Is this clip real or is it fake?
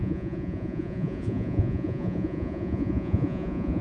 fake